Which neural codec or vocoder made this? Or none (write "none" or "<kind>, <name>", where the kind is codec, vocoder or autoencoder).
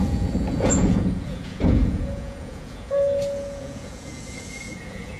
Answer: vocoder, Vocos